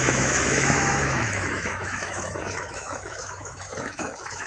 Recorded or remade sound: remade